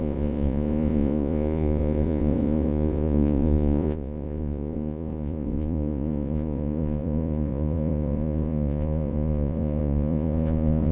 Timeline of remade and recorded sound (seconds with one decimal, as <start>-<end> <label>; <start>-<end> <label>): 0.0-10.9 remade